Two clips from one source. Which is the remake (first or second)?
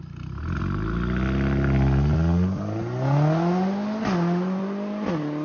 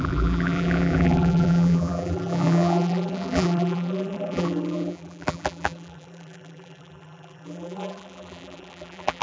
second